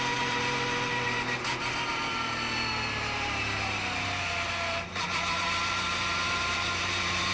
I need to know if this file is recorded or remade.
remade